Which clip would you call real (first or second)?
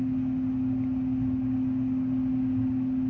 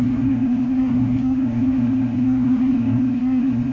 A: first